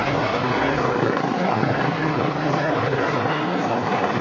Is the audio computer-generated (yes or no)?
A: yes